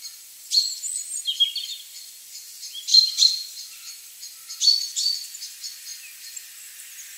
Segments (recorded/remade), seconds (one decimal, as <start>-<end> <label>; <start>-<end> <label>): 0.0-2.9 recorded; 2.9-3.9 remade; 3.9-7.2 recorded